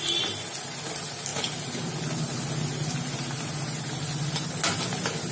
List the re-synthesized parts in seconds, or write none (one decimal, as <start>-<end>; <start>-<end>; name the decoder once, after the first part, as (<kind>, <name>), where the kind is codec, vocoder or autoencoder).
none